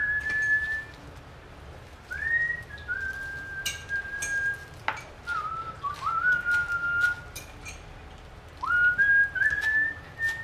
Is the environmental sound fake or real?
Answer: real